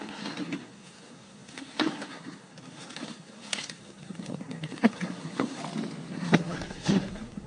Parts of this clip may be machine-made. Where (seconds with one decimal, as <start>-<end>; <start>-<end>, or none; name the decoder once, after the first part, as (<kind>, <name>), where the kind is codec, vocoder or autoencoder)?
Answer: 0.0-5.6 (codec, SNAC); 6.1-7.5